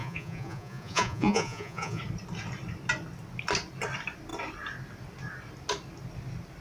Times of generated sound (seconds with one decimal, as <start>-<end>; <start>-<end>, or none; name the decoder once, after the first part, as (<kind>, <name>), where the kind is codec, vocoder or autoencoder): 0.0-2.0 (vocoder, Vocos)